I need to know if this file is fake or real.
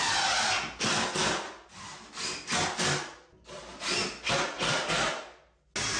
real